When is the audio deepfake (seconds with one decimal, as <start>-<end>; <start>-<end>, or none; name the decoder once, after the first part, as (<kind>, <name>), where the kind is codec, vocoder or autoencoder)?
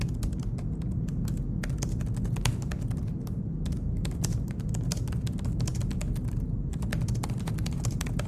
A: none